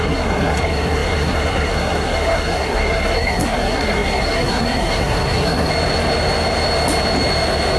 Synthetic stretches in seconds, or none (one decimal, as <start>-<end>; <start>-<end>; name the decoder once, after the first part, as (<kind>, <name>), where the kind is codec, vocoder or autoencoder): 0.0-5.7 (codec, SNAC)